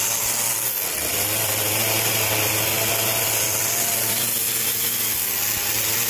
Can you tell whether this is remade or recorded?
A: recorded